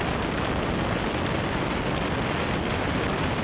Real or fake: real